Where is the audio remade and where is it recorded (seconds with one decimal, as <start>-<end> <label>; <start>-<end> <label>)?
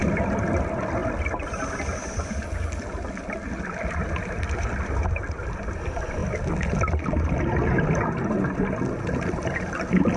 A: 0.0-1.0 remade; 1.0-4.4 recorded; 4.4-6.2 remade; 6.2-9.2 recorded; 9.2-10.2 remade